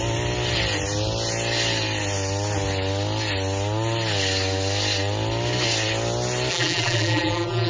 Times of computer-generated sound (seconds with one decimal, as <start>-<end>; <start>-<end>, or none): 6.5-7.7